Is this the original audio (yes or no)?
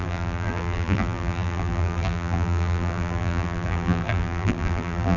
no